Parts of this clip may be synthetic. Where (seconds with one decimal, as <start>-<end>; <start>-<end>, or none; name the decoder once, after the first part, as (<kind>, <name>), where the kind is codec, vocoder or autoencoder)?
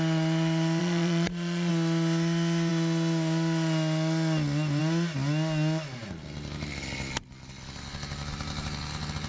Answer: 0.8-1.7 (vocoder, Vocos)